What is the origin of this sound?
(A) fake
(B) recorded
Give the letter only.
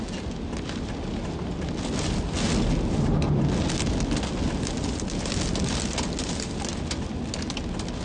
B